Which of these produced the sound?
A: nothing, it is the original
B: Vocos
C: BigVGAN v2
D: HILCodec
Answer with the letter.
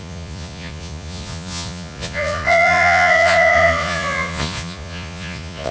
B